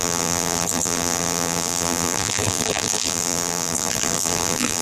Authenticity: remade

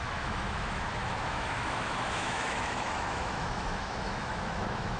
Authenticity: remade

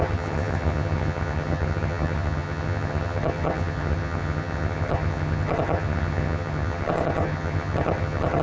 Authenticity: remade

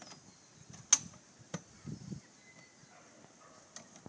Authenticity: recorded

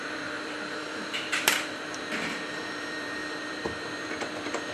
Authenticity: remade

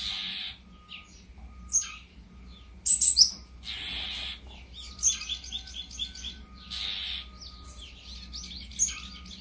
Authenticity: recorded